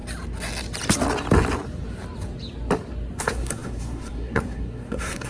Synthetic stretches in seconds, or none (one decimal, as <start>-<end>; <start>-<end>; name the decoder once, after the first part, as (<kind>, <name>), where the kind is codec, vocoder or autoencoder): 3.2-5.3 (codec, SNAC)